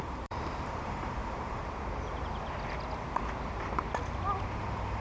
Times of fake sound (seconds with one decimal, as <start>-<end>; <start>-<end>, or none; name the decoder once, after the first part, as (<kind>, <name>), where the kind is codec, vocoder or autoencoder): 0.0-1.6 (vocoder, BigVGAN v2); 4.6-5.0